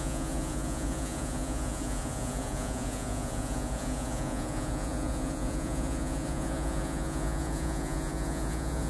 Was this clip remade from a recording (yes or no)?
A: yes